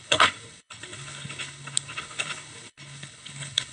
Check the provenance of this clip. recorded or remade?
remade